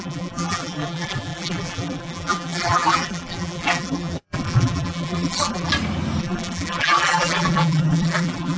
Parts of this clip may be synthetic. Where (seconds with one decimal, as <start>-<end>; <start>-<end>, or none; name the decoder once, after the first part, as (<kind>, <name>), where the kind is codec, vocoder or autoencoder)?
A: 0.0-5.7 (vocoder, BigVGAN v2); 6.2-8.6